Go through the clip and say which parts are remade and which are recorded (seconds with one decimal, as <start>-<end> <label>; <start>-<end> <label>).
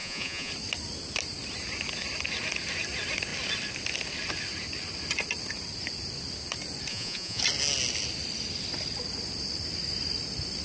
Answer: 0.0-0.5 remade; 0.5-6.9 recorded; 6.9-7.4 remade; 7.4-10.6 recorded